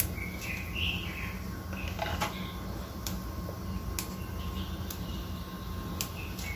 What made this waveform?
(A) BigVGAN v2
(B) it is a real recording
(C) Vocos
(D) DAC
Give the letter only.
B